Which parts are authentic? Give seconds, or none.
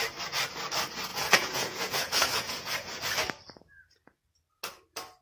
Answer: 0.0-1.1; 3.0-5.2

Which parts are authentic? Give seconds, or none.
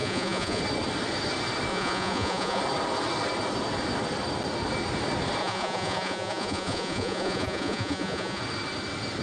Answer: 0.6-1.7; 2.6-5.4; 8.4-9.2